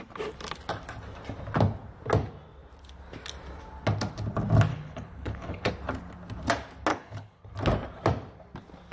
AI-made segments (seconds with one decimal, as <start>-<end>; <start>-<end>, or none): 4.7-5.7; 6.9-7.5